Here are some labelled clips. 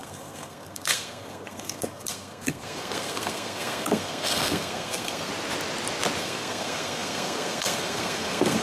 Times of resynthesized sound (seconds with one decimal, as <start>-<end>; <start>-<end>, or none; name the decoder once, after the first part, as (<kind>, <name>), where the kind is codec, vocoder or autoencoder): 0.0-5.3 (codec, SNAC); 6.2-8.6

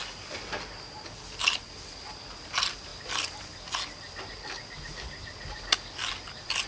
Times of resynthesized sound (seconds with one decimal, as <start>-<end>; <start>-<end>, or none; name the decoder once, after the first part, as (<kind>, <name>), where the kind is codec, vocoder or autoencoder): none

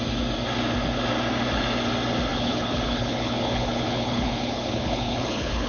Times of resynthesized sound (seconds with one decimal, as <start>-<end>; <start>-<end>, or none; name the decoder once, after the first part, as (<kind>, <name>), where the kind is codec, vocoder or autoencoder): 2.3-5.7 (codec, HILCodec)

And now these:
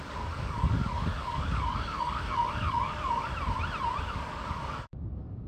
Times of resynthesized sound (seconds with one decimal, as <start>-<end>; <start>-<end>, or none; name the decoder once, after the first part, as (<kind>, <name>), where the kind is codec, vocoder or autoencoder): 0.0-3.3 (codec, DAC); 4.0-5.5

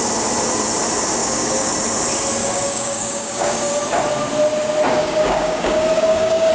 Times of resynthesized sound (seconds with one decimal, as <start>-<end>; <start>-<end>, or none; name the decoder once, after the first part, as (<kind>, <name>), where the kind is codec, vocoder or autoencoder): 1.2-1.7 (codec, DAC); 2.4-3.7; 4.9-6.5

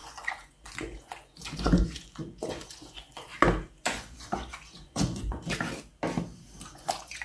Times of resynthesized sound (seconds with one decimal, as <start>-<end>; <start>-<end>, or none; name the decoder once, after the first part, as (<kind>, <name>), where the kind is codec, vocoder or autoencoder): 0.0-3.3 (vocoder, Vocos); 3.8-5.4; 6.7-7.2

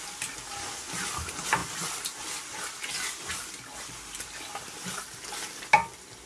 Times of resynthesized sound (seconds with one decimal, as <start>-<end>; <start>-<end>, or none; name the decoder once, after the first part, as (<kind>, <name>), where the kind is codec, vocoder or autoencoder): none